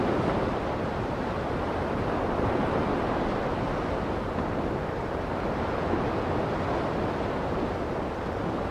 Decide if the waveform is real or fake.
real